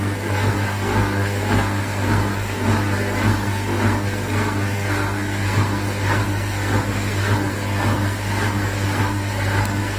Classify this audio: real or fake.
fake